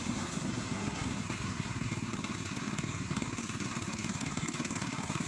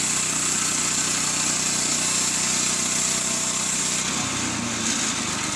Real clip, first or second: second